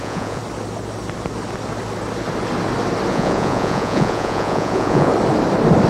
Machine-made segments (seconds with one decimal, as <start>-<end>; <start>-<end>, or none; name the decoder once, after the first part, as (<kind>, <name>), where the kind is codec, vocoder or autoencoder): 0.0-0.4 (vocoder, Vocos); 3.1-5.1